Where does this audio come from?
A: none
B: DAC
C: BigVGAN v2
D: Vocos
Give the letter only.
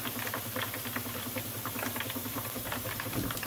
C